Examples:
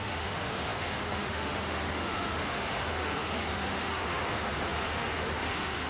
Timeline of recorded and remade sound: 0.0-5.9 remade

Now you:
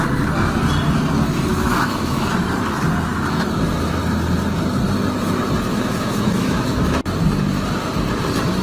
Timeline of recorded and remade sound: 0.0-1.5 recorded; 1.5-2.3 remade; 2.3-5.7 recorded; 5.7-7.0 remade; 7.0-8.6 recorded

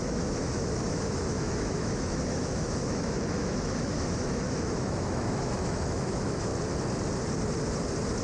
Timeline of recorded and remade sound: 0.0-6.5 remade; 6.5-8.2 recorded